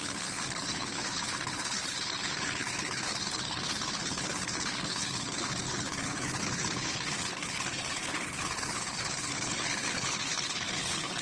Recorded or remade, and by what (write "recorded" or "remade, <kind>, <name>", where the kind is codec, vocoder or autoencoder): remade, codec, HILCodec